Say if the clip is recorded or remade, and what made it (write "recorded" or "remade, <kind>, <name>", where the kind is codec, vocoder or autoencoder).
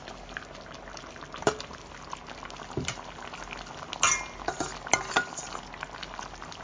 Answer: recorded